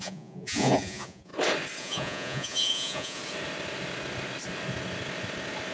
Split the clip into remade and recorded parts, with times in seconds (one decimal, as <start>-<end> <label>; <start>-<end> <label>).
0.0-1.3 remade; 1.3-1.8 recorded; 1.8-3.2 remade; 3.2-5.7 recorded